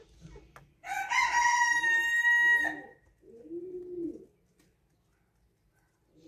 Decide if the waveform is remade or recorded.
recorded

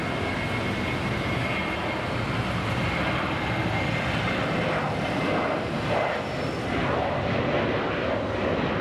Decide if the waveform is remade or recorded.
recorded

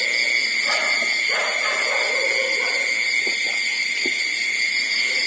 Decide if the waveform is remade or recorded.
recorded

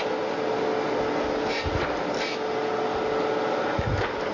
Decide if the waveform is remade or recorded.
recorded